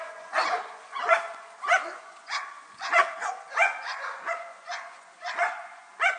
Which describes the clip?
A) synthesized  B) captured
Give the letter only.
A